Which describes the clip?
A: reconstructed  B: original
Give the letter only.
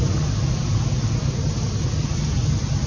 B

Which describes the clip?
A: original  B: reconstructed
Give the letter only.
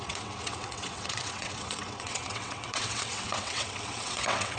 B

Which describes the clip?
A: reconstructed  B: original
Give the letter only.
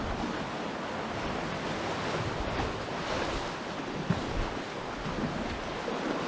B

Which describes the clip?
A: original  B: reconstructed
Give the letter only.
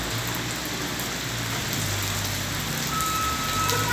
A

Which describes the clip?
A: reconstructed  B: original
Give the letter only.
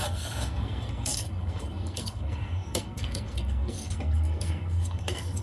A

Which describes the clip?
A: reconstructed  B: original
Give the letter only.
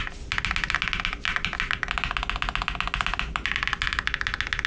B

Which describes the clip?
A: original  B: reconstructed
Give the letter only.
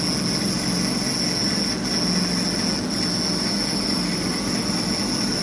A